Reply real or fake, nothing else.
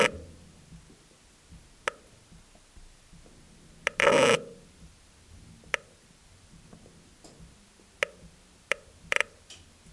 real